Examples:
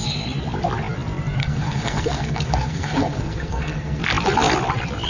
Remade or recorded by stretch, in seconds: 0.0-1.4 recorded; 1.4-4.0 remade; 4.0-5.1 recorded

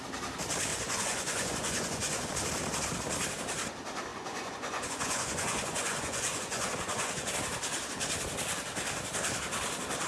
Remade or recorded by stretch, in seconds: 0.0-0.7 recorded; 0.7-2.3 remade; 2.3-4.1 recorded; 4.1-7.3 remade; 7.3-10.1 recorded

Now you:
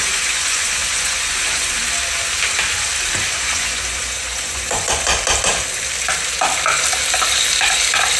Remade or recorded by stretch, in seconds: 0.0-1.8 remade; 1.8-3.3 recorded; 3.3-5.1 remade; 5.1-8.2 recorded